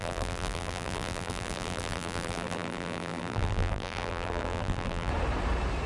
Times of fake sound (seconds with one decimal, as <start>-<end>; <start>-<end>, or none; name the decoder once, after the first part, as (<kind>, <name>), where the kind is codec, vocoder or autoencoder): 0.0-5.1 (vocoder, BigVGAN v2)